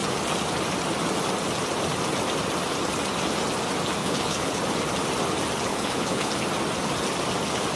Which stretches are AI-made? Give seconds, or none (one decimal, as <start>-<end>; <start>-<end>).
4.0-4.6; 5.7-6.3